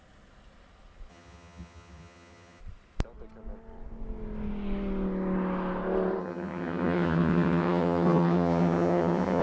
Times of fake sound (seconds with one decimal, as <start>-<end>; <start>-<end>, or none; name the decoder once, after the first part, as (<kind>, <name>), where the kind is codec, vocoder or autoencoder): 1.1-2.6 (vocoder, HiFi-GAN); 6.2-9.4